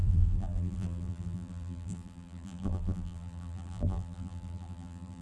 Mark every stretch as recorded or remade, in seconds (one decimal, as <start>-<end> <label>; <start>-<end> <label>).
0.0-5.2 remade